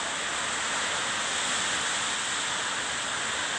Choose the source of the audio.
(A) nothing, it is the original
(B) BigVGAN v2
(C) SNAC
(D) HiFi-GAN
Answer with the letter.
A